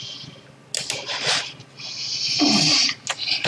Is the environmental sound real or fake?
real